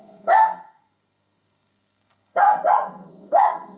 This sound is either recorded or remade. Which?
remade